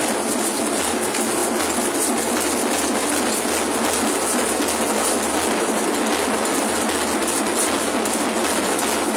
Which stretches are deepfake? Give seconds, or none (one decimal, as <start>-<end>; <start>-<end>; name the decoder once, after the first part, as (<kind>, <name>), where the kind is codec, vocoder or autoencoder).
none